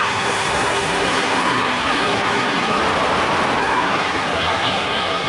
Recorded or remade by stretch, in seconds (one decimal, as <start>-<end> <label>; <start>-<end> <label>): 0.0-2.8 remade; 2.8-3.6 recorded; 3.6-5.3 remade